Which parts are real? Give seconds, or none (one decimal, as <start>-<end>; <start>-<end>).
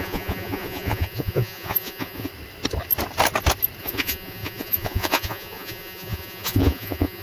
2.3-3.8